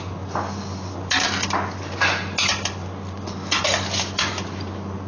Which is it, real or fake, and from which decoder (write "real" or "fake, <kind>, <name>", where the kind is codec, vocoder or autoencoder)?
real